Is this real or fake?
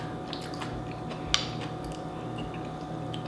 real